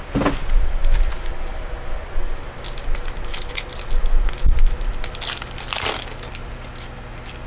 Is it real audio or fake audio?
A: real